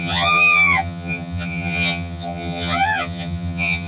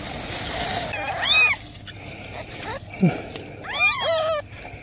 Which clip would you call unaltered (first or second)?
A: second